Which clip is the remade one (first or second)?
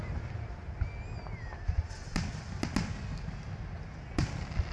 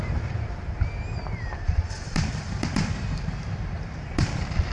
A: second